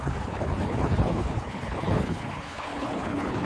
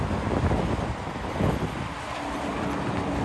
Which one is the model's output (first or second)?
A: first